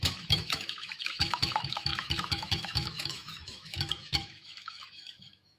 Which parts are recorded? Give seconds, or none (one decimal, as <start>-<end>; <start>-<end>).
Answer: none